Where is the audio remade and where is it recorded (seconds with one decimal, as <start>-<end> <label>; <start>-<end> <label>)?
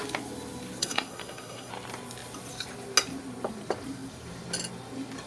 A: 0.0-0.8 recorded; 0.8-1.7 remade; 1.7-5.3 recorded